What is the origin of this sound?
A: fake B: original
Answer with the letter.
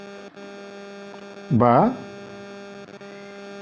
B